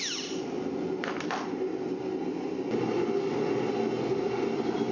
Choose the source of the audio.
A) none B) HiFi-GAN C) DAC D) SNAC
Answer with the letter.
A